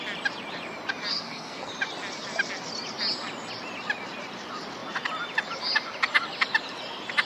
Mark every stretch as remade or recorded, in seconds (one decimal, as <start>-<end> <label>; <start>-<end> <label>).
0.0-1.1 recorded; 1.1-1.7 remade; 1.7-7.3 recorded